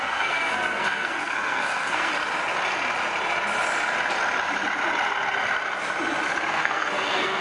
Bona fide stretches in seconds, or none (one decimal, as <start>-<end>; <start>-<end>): 2.1-6.5